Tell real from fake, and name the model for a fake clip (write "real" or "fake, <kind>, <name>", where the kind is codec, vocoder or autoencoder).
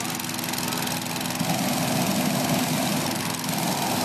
real